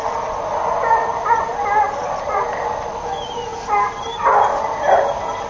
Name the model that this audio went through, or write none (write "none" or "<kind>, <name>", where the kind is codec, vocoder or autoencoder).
none